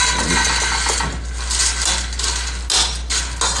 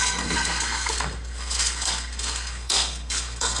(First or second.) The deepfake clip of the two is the second